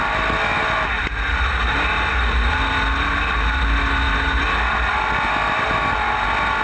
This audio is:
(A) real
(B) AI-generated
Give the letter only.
A